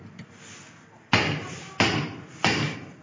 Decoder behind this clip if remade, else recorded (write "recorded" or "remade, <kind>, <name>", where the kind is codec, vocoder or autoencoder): recorded